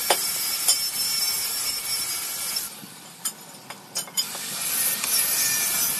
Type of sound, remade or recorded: recorded